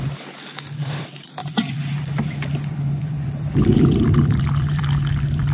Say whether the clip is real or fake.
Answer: fake